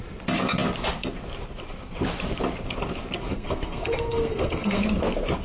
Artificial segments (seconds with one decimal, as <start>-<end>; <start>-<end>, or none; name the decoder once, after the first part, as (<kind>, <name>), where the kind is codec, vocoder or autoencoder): 3.3-4.8 (codec, SNAC)

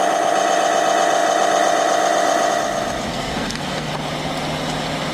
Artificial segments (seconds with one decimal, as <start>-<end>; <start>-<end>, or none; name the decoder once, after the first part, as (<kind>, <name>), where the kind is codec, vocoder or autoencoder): 3.1-3.9 (codec, SNAC)